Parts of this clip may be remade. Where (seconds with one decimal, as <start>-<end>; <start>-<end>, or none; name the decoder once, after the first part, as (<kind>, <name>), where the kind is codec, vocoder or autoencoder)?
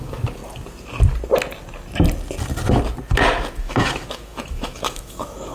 0.0-0.4 (autoencoder, DAC-VAE); 3.5-5.5